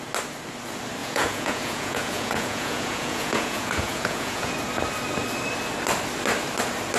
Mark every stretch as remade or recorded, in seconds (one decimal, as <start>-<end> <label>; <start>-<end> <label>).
0.0-1.0 recorded; 1.0-4.5 remade; 4.5-7.0 recorded